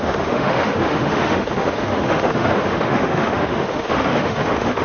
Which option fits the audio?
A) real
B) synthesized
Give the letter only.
B